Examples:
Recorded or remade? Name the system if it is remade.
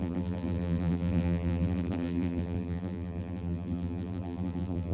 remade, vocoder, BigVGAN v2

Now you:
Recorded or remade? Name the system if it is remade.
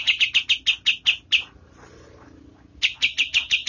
recorded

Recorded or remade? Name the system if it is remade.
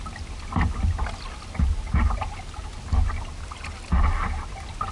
recorded